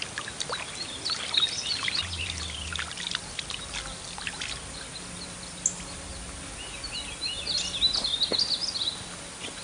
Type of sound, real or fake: real